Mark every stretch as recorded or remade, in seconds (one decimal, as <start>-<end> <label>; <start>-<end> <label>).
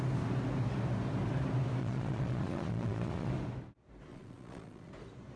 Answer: 0.0-1.8 recorded; 1.8-3.3 remade; 3.3-4.1 recorded; 4.1-4.9 remade; 4.9-5.4 recorded